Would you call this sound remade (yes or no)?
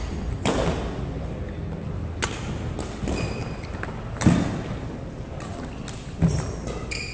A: no